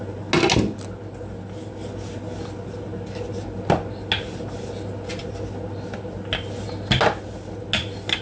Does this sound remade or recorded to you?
recorded